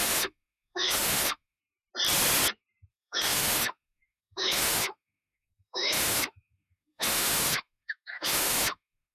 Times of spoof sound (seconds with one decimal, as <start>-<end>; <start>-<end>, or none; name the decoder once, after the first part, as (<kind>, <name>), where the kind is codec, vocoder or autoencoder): 0.0-1.6 (autoencoder, DAC-VAE); 2.9-9.1